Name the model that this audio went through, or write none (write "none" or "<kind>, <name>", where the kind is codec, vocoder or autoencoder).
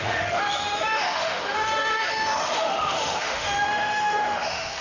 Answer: autoencoder, DAC-VAE